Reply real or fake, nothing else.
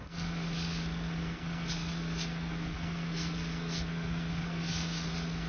fake